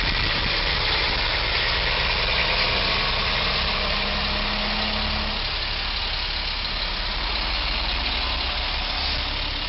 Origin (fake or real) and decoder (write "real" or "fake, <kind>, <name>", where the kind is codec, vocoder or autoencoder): real